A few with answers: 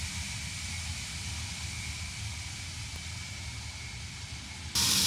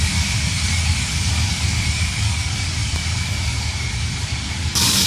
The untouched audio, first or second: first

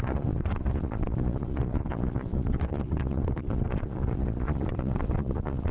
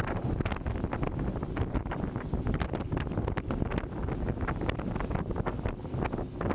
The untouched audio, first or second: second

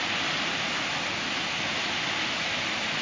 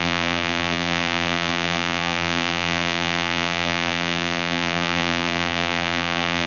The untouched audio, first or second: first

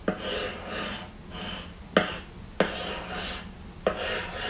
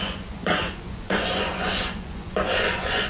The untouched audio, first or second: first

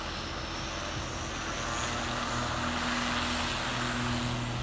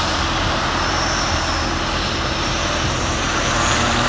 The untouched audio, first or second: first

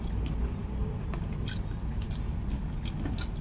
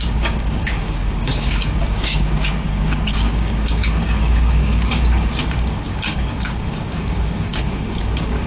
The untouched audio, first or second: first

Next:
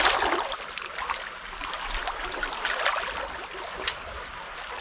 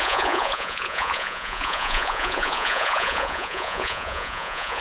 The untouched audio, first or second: first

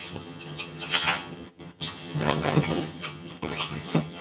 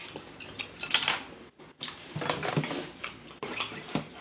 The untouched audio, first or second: second